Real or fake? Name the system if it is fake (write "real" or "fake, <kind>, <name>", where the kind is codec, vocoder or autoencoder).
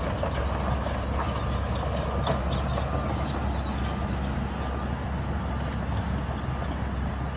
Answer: real